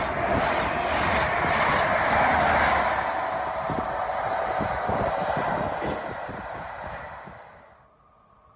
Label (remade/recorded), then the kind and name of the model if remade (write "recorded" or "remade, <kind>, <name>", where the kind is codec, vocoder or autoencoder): recorded